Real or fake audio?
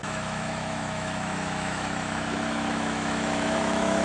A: fake